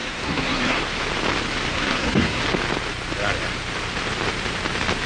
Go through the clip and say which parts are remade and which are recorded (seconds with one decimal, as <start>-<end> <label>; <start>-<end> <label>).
0.0-0.8 remade; 0.8-1.7 recorded; 1.7-2.4 remade; 2.4-5.1 recorded